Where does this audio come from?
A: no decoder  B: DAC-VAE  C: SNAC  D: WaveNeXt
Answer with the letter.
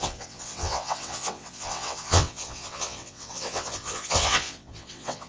D